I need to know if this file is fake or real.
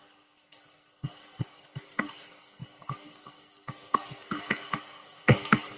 fake